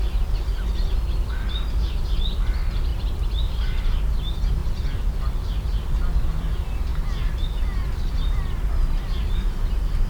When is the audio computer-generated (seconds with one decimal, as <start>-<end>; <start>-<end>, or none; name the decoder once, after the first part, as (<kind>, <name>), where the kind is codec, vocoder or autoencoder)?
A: none